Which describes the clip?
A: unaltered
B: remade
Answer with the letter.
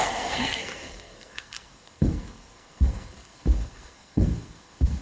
B